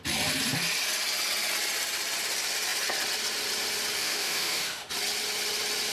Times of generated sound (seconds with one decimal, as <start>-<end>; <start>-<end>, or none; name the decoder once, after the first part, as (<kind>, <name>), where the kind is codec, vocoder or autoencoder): 4.0-4.9 (autoencoder, DAC-VAE)